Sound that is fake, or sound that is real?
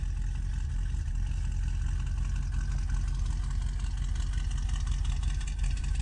real